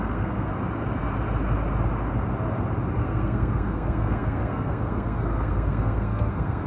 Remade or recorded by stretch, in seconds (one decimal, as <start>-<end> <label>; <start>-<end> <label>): 0.0-0.5 remade; 0.5-3.0 recorded; 3.0-6.7 remade